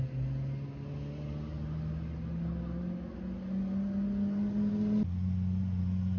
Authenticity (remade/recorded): recorded